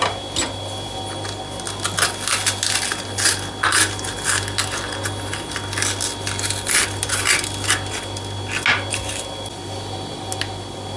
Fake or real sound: real